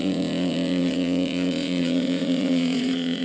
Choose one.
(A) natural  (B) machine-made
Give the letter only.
B